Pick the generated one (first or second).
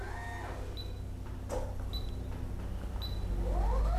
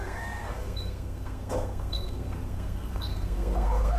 second